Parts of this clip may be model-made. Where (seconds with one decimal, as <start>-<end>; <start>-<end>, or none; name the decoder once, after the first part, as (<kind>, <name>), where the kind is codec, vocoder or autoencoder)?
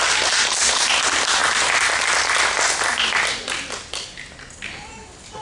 none